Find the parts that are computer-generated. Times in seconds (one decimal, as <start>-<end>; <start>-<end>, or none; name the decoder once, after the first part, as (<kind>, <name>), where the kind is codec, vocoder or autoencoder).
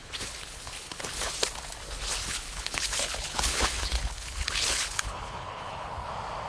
0.0-1.3 (codec, HILCodec); 2.2-6.1